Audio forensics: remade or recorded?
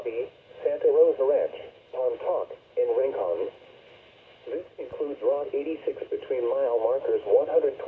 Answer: recorded